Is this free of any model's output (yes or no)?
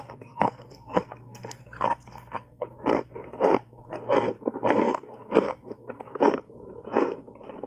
no